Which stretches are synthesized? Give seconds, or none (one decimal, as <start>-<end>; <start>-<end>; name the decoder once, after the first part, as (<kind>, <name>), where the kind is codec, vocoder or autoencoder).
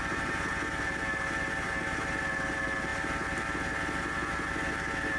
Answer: none